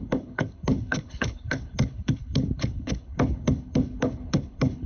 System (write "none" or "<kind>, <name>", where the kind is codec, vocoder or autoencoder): codec, HILCodec